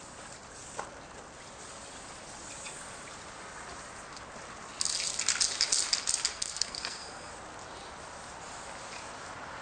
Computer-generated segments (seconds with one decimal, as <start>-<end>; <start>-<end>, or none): 6.3-7.3